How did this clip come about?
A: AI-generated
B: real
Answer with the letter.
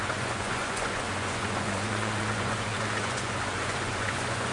A